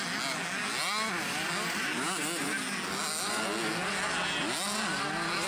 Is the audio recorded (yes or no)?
yes